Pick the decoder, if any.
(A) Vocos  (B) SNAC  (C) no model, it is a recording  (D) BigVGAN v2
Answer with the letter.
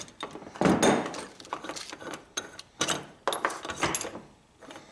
C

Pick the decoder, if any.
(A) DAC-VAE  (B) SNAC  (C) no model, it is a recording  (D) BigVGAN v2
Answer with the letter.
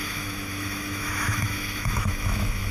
A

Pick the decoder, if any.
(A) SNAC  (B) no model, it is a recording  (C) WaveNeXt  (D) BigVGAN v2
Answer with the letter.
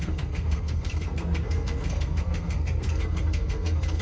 A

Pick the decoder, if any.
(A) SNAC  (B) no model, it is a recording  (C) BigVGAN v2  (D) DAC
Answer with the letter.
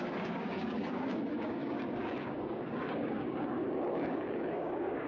D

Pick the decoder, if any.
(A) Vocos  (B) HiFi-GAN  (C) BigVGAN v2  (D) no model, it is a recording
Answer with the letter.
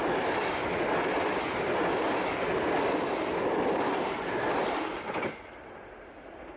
D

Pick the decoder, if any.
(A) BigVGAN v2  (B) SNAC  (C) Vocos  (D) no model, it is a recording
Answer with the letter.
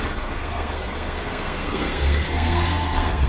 B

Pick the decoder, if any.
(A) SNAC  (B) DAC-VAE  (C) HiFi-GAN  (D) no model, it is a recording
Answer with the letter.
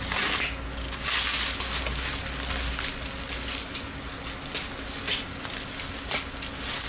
D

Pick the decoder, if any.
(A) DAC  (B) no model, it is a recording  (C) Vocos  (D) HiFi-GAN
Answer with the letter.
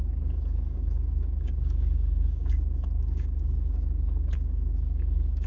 A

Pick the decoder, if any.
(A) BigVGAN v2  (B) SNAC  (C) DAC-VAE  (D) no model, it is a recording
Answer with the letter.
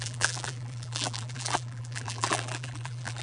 A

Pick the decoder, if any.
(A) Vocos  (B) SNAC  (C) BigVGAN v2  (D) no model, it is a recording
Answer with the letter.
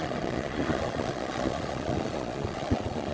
A